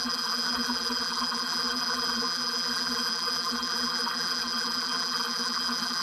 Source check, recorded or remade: remade